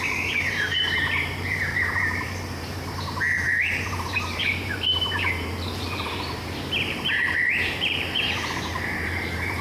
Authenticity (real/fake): fake